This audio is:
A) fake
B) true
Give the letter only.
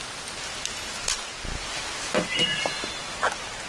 B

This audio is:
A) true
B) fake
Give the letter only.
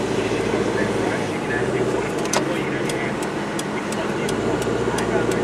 A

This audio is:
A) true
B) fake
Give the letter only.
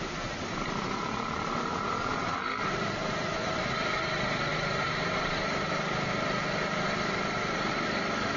B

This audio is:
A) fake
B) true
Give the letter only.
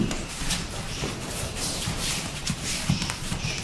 A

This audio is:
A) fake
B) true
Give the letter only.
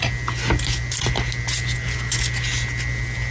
B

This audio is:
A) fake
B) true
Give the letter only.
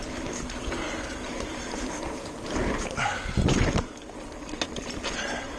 B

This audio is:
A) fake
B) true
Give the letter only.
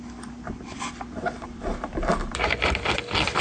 A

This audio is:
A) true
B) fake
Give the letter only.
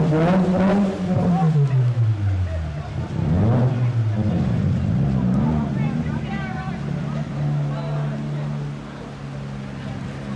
A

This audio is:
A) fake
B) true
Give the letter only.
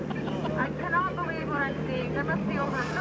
B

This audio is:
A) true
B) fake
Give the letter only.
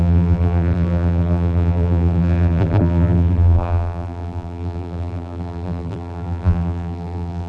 B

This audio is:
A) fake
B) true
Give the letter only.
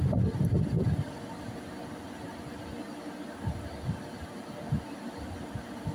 B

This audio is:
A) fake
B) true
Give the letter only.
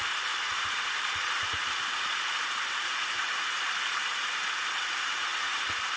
A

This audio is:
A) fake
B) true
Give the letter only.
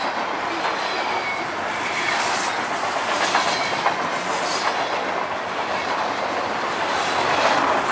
A